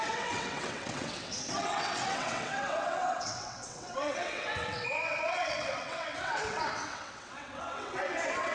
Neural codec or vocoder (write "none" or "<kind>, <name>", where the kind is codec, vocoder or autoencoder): vocoder, WaveNeXt